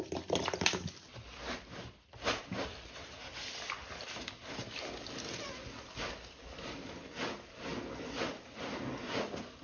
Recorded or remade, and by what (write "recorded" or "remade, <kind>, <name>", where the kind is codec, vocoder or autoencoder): recorded